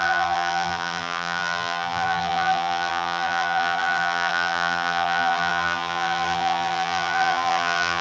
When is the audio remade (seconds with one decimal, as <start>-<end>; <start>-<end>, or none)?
0.0-8.0